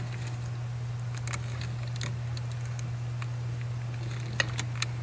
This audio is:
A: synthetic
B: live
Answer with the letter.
B